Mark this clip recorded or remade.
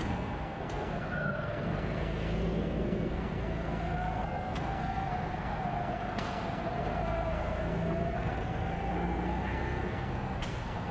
remade